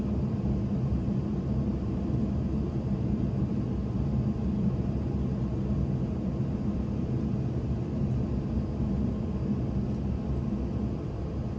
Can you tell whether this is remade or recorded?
recorded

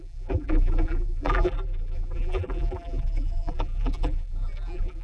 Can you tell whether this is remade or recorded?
remade